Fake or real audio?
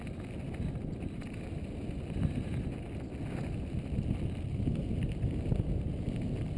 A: real